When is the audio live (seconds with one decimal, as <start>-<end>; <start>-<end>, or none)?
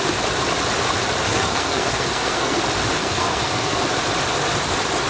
0.0-1.3; 2.6-3.0; 3.8-5.1